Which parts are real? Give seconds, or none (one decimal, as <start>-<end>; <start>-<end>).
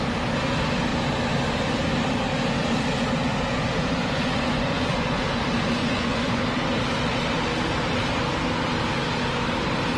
0.0-3.5; 5.2-5.8; 6.4-10.0